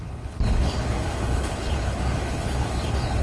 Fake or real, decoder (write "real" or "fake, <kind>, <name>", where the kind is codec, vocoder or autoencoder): fake, codec, HILCodec